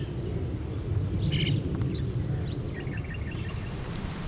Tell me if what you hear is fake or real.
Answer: real